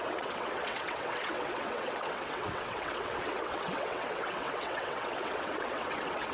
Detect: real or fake fake